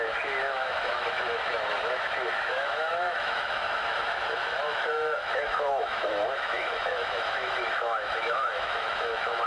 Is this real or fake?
fake